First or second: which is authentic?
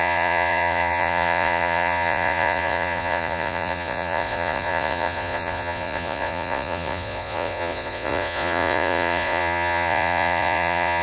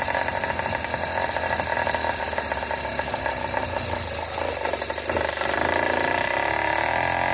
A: second